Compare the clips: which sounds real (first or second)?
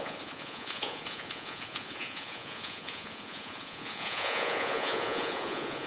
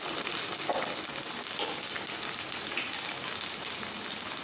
second